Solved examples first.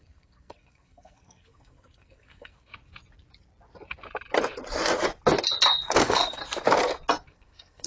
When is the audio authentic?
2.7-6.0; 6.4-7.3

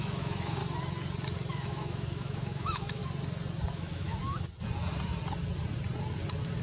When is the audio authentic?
0.6-1.5; 3.0-3.7; 4.2-6.6